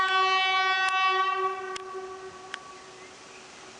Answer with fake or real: real